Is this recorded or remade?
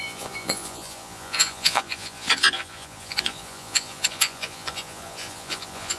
remade